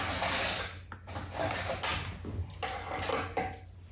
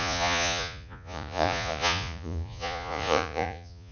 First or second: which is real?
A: first